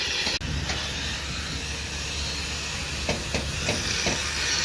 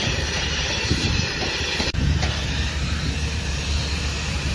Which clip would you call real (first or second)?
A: first